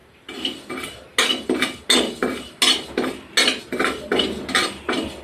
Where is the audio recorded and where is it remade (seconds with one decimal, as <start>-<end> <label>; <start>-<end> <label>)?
0.0-0.7 remade; 0.7-5.2 recorded